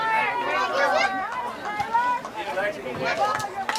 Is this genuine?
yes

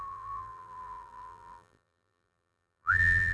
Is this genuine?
no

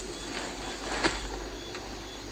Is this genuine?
yes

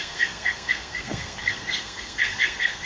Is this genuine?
no